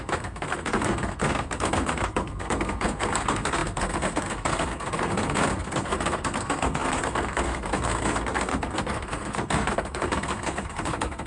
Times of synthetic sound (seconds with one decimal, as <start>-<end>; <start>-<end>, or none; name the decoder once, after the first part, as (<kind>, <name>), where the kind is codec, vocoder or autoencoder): 0.0-11.3 (codec, SNAC)